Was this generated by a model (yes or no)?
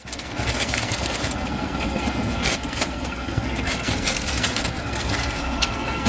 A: yes